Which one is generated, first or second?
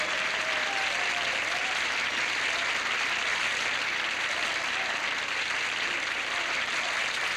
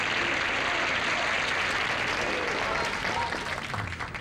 first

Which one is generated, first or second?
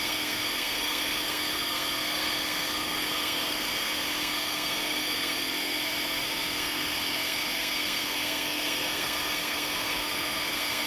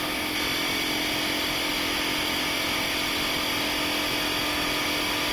first